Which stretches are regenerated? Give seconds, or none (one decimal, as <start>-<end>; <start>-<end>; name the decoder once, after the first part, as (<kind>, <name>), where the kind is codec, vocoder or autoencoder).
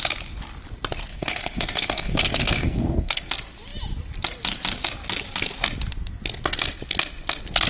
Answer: 1.1-3.3 (codec, SNAC)